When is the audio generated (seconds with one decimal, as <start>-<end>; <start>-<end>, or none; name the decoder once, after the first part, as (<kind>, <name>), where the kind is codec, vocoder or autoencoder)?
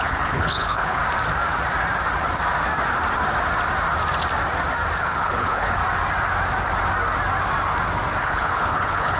0.0-1.0 (codec, HILCodec); 5.0-5.8; 8.2-9.2